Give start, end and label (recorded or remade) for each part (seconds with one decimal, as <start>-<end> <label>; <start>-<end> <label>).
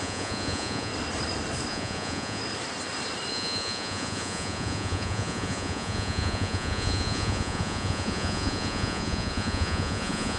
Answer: 0.0-0.9 remade; 0.9-1.7 recorded; 1.7-2.4 remade; 2.4-3.3 recorded; 3.3-10.4 remade